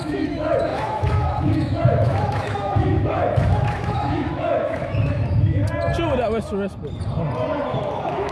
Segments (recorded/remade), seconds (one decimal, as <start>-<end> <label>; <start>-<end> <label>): 0.0-5.6 remade; 5.6-7.8 recorded; 7.8-8.3 remade